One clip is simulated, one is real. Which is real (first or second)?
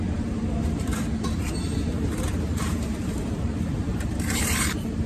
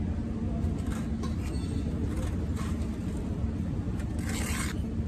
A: second